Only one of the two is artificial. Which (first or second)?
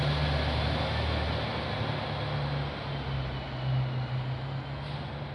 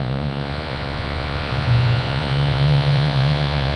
second